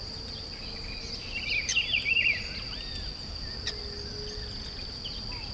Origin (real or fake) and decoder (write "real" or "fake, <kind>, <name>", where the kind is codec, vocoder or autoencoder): real